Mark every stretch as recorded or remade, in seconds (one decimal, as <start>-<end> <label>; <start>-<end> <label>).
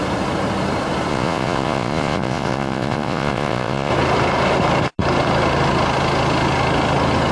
0.0-1.1 recorded; 1.1-3.9 remade; 3.9-7.3 recorded